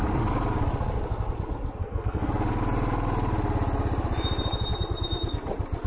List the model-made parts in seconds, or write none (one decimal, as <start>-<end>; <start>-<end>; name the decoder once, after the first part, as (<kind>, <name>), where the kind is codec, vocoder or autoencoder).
1.8-2.3 (codec, SNAC)